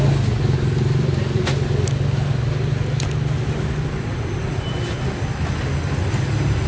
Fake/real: real